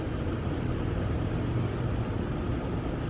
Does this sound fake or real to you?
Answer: real